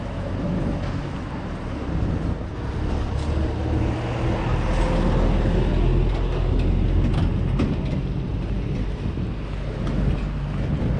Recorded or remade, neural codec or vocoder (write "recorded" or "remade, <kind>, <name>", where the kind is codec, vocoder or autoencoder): recorded